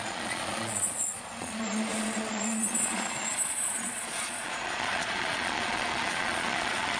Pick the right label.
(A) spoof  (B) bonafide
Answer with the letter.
A